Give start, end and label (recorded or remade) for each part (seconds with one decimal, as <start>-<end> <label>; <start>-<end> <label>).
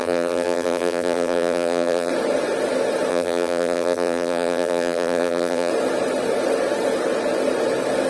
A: 0.0-2.1 remade; 2.1-3.1 recorded; 3.1-5.7 remade; 5.7-8.1 recorded